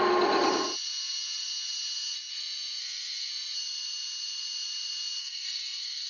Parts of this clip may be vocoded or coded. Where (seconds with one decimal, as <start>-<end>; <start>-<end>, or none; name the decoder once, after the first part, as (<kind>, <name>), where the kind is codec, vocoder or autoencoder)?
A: 2.8-3.3 (codec, SNAC); 5.2-6.1